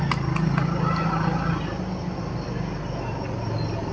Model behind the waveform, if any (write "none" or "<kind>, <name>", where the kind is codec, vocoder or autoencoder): none